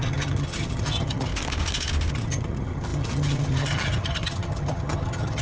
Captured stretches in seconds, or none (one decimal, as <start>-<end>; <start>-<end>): 1.3-2.1